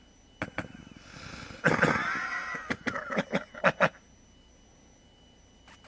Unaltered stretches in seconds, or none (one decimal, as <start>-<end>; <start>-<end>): 0.0-5.9